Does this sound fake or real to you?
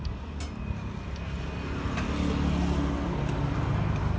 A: real